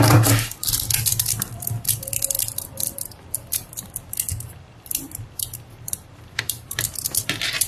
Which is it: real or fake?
fake